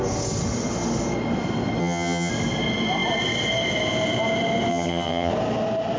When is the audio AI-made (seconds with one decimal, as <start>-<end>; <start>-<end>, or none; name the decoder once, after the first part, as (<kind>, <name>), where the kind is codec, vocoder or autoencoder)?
1.8-2.3 (vocoder, HiFi-GAN); 4.7-5.3